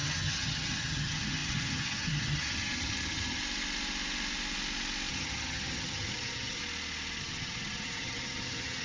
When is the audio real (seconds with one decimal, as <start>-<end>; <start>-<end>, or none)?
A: 3.4-5.1; 6.6-7.2